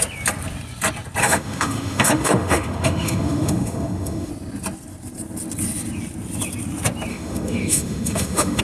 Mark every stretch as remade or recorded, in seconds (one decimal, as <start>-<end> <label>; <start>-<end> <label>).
0.0-1.2 recorded; 1.2-4.3 remade; 4.3-7.1 recorded; 7.1-8.6 remade